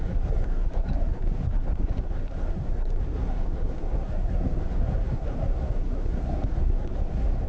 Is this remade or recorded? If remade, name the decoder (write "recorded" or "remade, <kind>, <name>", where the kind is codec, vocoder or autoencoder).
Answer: remade, codec, SNAC